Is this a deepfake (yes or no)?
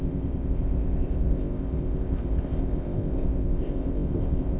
yes